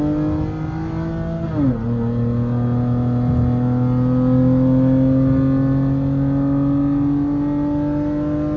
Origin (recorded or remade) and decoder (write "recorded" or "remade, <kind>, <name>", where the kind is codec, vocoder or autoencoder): recorded